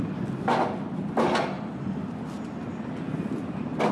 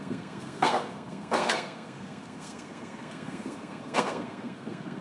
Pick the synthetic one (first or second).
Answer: second